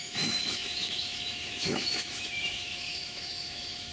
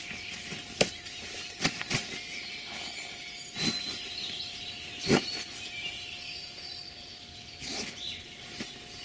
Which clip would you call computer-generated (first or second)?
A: first